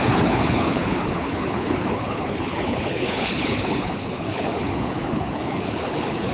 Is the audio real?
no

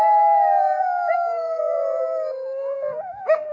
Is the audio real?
no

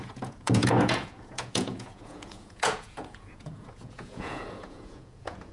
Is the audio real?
no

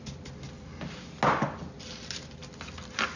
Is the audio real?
yes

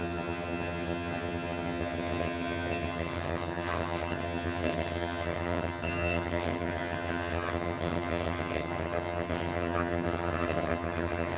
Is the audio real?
no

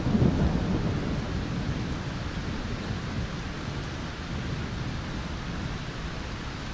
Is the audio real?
yes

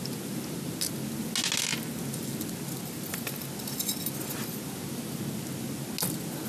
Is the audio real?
yes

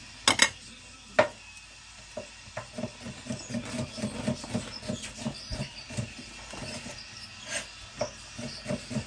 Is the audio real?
yes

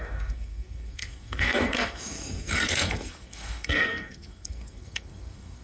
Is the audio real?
no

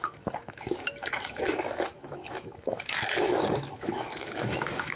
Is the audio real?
no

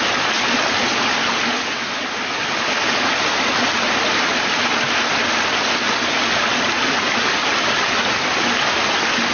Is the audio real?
yes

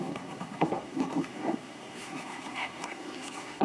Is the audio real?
no